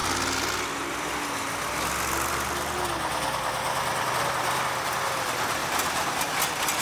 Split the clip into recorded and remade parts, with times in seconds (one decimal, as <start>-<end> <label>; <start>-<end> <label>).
0.0-5.6 recorded; 5.6-6.2 remade; 6.2-6.8 recorded